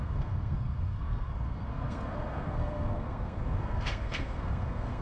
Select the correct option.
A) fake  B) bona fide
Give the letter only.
A